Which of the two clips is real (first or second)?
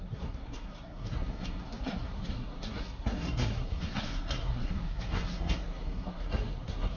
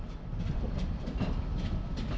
second